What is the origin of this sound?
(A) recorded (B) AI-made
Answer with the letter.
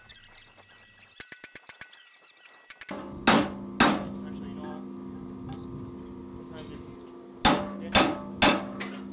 A